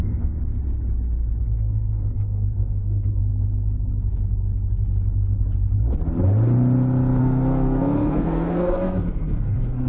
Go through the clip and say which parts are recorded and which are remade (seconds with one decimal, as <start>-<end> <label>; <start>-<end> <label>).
0.0-0.4 remade; 0.4-1.4 recorded; 1.4-3.2 remade; 3.2-7.2 recorded; 7.2-9.9 remade